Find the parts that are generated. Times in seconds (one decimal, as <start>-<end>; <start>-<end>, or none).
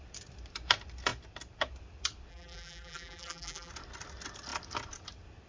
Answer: 2.3-3.7